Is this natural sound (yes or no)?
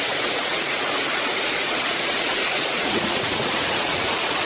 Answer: no